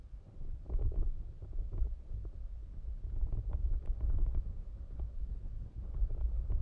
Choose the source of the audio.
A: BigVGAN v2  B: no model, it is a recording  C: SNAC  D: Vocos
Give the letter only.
B